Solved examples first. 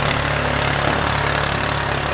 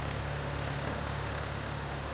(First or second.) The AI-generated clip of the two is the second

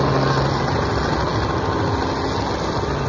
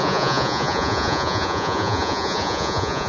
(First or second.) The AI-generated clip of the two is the second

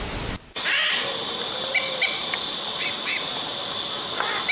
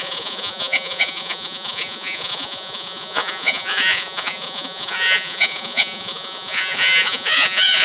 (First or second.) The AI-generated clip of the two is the second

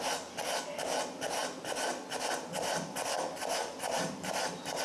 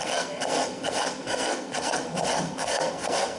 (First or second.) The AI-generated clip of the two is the second